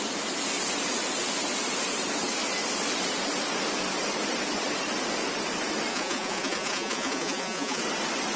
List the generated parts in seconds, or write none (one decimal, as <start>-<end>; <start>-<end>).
5.9-7.8